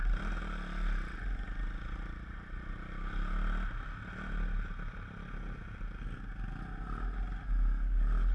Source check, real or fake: real